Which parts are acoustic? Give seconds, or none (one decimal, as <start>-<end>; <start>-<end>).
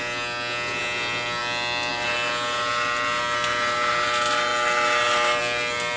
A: 0.0-6.0